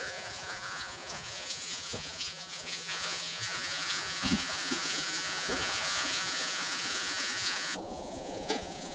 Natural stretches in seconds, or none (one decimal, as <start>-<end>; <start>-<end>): none

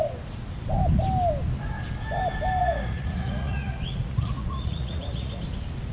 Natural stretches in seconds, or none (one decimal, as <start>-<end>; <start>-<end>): 0.0-2.6; 5.4-5.9

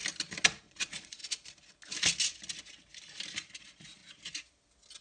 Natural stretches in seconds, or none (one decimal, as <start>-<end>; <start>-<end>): 0.0-0.6; 1.2-3.6; 4.0-5.0

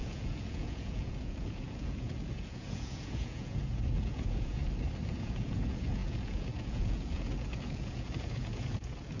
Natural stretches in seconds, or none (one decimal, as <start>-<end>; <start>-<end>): 4.6-5.1